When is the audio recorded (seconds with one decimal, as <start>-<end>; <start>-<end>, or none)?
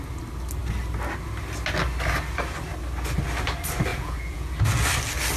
0.0-3.9; 4.5-5.4